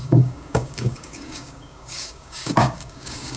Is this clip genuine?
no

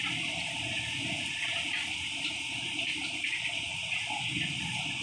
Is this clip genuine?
no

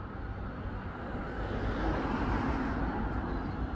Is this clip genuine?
yes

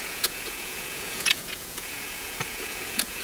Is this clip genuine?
no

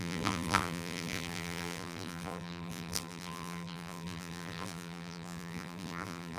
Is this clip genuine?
no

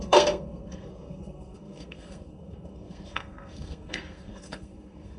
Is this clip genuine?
no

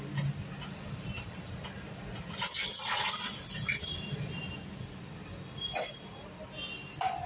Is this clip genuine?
yes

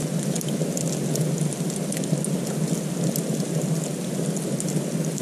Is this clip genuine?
yes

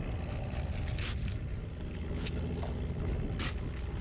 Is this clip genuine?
yes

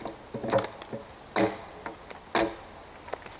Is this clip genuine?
yes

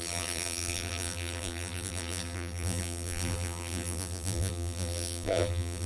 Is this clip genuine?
no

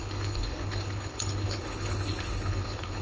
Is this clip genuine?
no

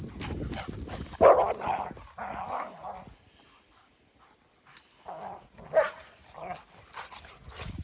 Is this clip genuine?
yes